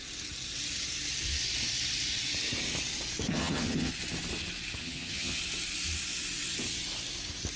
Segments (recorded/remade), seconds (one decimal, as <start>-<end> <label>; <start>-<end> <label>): 0.0-3.3 recorded; 3.3-3.9 remade; 3.9-4.8 recorded; 4.8-5.4 remade; 5.4-7.6 recorded